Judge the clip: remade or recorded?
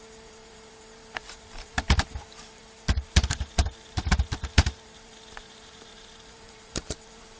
remade